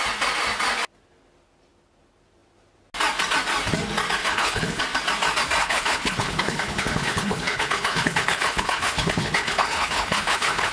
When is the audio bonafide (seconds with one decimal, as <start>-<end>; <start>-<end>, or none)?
0.0-4.2; 4.8-5.6